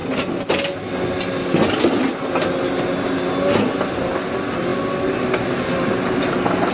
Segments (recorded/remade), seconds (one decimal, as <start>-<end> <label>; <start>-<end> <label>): 0.0-6.7 recorded